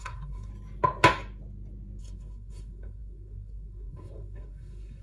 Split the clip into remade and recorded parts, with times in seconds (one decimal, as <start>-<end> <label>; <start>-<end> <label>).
0.0-0.5 remade; 0.5-2.0 recorded; 2.0-5.0 remade